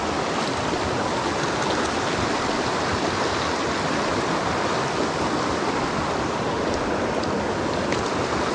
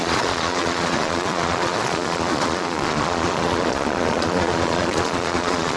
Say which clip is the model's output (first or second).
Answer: second